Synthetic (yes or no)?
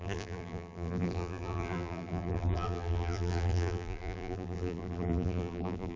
yes